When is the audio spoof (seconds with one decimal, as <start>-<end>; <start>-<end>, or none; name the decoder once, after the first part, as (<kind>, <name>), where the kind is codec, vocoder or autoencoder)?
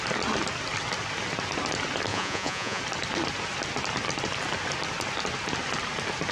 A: 2.1-2.8 (vocoder, Vocos)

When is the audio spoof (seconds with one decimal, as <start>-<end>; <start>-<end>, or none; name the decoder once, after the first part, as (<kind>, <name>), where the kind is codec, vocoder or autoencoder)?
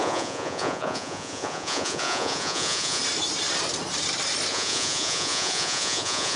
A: 0.0-3.0 (vocoder, Vocos); 4.5-6.4